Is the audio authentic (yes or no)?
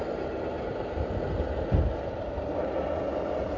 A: yes